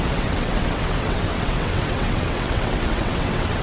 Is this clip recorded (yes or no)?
no